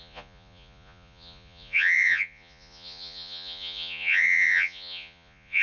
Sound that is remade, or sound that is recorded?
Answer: remade